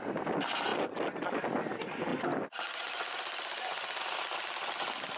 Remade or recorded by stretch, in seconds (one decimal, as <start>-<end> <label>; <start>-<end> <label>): 0.0-5.2 recorded